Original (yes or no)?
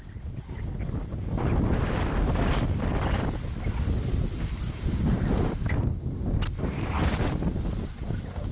yes